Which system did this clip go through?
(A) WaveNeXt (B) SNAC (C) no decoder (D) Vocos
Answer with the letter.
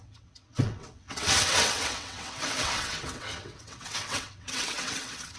A